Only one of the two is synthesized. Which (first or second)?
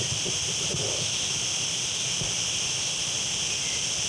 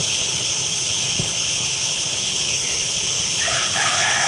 second